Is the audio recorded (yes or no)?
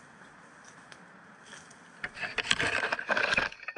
yes